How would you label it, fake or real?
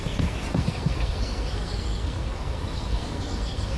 fake